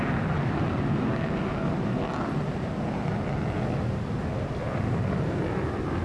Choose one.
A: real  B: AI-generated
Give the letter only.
A